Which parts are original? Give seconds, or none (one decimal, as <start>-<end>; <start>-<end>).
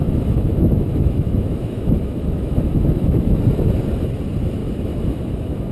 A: 3.4-4.6